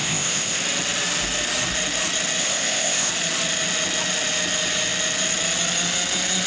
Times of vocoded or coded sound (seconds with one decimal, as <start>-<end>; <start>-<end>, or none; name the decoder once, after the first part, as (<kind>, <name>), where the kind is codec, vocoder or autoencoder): 0.0-0.6 (codec, ZipCodec); 2.4-3.1